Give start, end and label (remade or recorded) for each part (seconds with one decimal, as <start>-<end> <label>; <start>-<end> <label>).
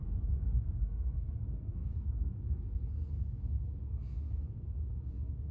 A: 0.0-5.5 remade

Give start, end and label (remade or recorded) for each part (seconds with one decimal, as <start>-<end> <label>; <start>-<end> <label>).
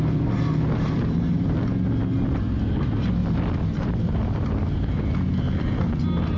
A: 0.0-3.2 recorded; 3.2-5.8 remade; 5.8-6.4 recorded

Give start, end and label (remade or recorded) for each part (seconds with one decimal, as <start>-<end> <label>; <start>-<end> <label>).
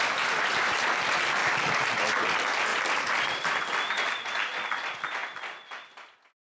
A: 0.0-5.2 remade; 5.2-5.8 recorded; 5.8-6.5 remade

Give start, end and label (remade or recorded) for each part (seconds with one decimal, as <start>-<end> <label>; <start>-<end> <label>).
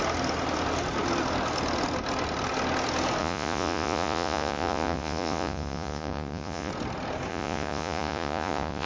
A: 0.0-3.2 recorded; 3.2-6.7 remade; 6.7-7.3 recorded; 7.3-8.9 remade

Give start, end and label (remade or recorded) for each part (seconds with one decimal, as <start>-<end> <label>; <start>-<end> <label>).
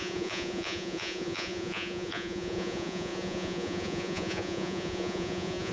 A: 0.0-5.7 remade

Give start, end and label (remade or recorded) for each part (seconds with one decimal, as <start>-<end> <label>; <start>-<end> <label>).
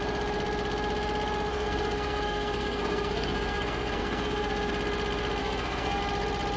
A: 0.0-1.5 recorded; 1.5-4.7 remade; 4.7-5.4 recorded; 5.4-6.0 remade; 6.0-6.6 recorded